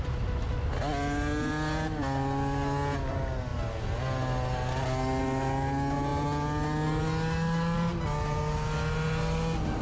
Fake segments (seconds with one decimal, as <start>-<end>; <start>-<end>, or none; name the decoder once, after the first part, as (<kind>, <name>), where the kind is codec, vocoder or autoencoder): none